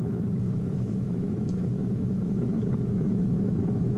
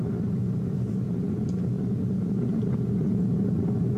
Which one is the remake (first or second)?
first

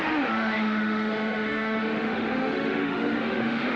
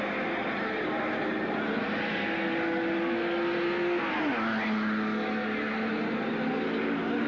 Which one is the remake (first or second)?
first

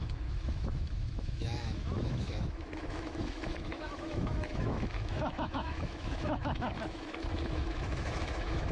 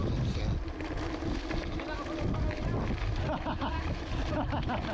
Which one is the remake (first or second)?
first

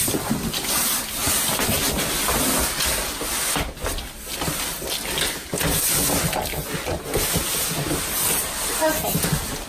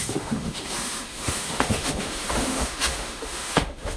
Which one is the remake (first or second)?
second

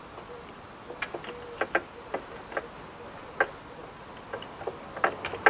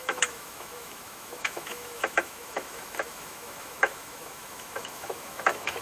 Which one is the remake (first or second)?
second